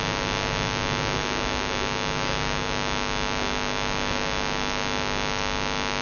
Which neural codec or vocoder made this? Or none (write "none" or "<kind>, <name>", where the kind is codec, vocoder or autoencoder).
none